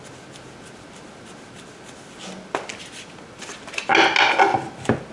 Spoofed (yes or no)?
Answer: no